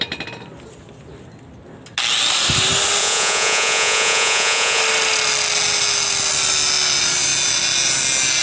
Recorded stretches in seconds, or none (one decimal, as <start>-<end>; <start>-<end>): 0.0-3.0; 4.8-8.4